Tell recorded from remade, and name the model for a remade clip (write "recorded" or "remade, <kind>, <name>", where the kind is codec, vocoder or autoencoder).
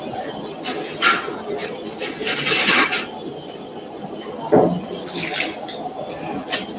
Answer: recorded